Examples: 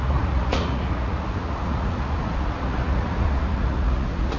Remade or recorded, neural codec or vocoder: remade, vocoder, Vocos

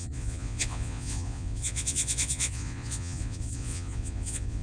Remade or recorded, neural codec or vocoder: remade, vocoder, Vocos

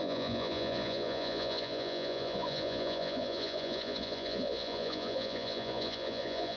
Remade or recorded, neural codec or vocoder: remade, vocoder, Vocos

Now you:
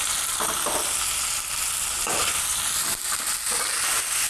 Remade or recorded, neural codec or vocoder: recorded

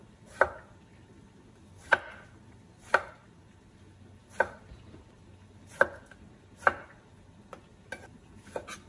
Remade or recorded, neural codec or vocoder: recorded